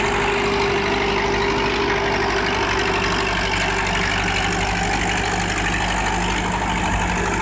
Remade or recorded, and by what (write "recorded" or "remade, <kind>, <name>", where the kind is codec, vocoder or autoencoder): recorded